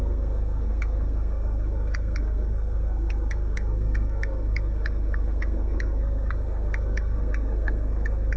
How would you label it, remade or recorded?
remade